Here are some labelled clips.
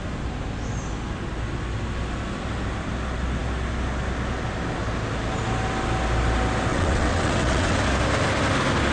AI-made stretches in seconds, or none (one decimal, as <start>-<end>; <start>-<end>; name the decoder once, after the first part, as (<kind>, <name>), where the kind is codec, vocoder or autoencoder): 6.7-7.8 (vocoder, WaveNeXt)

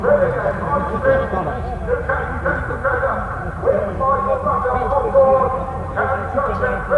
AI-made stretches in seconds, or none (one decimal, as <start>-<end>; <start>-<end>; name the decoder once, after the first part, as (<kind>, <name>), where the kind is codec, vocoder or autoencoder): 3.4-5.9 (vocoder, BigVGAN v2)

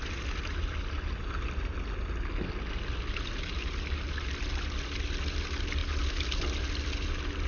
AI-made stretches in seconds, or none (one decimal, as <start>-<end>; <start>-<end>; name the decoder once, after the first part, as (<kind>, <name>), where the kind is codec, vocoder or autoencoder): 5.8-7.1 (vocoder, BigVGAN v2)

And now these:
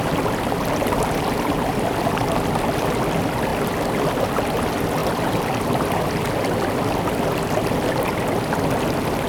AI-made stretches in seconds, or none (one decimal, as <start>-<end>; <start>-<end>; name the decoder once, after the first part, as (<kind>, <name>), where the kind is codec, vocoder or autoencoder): none

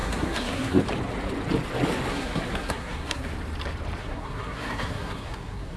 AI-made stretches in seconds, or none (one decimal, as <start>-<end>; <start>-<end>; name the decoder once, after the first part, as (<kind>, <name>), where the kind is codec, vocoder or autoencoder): 0.0-0.8 (codec, SNAC); 2.1-3.3; 4.0-5.8

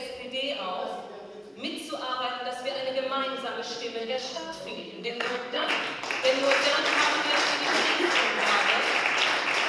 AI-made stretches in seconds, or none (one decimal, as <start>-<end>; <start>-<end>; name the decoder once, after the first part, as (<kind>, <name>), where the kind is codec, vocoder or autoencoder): 4.0-5.7 (codec, SNAC)

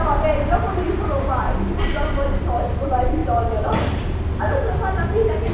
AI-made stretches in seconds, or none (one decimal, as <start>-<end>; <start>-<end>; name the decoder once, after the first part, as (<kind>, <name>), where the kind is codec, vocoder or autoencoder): none

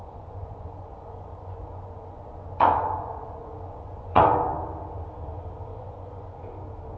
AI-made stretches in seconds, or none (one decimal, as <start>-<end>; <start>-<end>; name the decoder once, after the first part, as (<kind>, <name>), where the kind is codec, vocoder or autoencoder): 0.0-4.2 (vocoder, Vocos); 5.7-6.4